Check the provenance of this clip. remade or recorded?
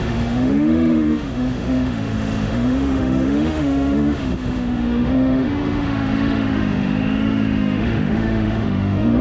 remade